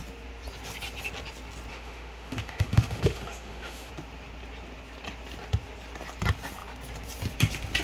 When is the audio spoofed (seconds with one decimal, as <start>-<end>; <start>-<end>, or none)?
1.7-3.9